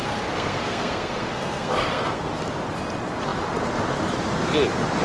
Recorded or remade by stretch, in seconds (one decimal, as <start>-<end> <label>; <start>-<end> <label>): 0.0-2.3 remade; 2.3-5.0 recorded